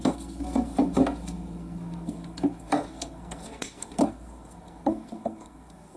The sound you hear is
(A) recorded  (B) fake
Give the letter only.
B